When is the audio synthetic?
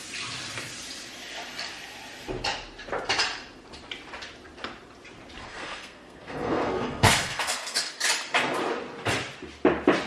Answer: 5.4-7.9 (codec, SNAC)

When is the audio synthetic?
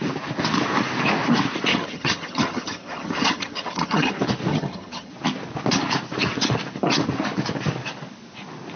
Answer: 1.7-4.1 (vocoder, HiFi-GAN); 4.5-5.1